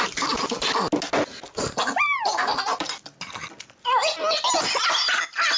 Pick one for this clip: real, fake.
real